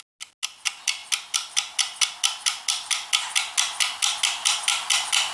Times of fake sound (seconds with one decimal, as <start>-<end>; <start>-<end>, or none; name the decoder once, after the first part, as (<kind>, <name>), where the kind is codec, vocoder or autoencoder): none